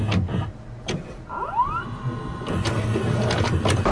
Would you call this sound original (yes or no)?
yes